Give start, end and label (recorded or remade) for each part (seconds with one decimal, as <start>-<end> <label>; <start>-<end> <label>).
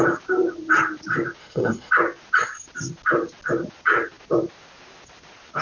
0.0-1.4 recorded; 1.4-1.9 remade; 1.9-5.6 recorded